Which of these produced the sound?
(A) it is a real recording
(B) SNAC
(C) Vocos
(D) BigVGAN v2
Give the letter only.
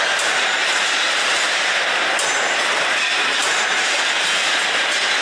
D